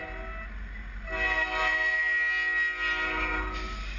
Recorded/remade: recorded